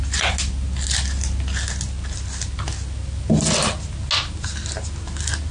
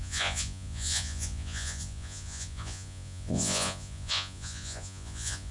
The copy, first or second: second